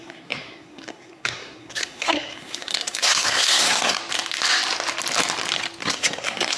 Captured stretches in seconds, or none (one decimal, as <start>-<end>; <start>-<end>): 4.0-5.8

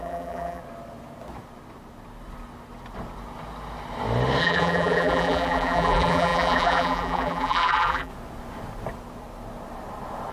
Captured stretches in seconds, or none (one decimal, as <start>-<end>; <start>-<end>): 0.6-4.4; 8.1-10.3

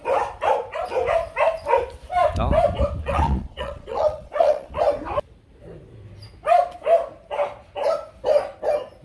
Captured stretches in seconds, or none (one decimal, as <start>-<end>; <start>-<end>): 0.0-3.0; 4.8-9.0

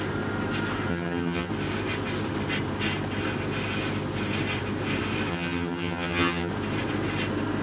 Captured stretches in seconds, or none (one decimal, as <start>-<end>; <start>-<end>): 0.0-0.9; 1.5-5.3; 6.5-7.6